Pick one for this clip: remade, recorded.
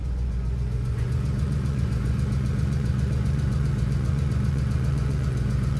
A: remade